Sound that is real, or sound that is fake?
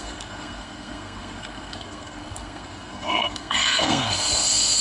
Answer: fake